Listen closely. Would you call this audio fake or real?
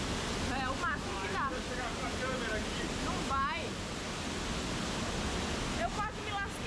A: real